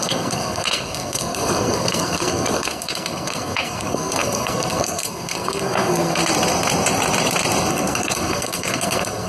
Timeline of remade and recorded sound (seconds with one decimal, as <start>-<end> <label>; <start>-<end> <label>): 0.0-6.2 remade; 6.2-7.7 recorded; 7.7-9.3 remade